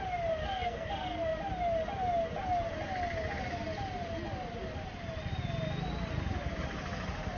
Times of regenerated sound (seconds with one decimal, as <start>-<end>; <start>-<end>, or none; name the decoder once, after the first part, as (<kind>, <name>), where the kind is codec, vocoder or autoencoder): 0.4-0.9 (codec, SNAC)